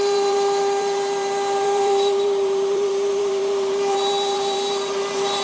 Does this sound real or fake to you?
fake